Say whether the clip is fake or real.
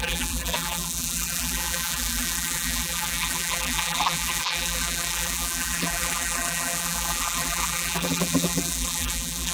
fake